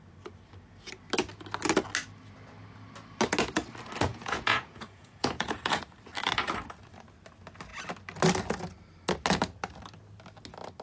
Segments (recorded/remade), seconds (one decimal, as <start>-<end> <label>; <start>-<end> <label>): 0.0-4.1 recorded; 4.1-5.8 remade; 5.8-10.8 recorded